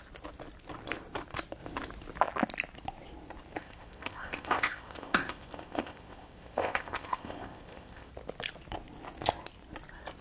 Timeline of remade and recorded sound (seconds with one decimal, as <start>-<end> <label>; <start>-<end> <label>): 0.0-3.6 recorded; 3.6-8.1 remade; 8.1-10.2 recorded